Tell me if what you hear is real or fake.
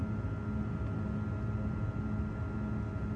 real